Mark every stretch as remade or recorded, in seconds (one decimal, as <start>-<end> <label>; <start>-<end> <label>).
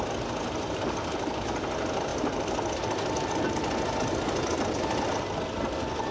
0.0-6.1 recorded